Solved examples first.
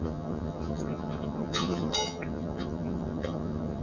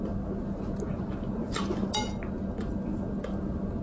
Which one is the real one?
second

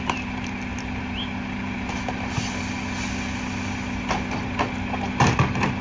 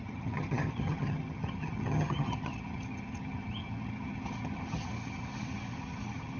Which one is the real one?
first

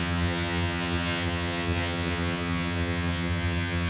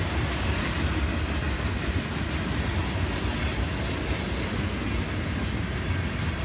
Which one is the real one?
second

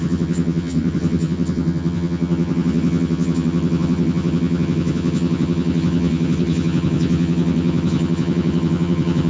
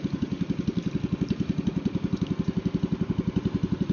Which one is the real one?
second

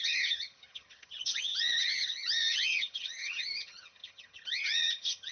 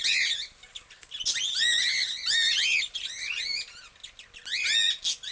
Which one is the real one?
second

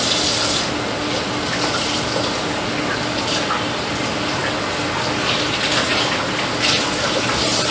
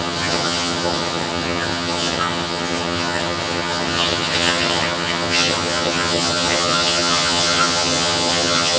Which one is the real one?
first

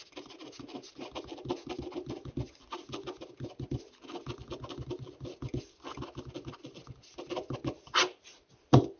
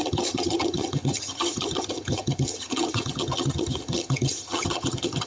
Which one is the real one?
first